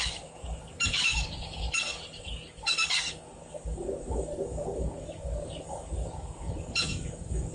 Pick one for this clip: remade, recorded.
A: remade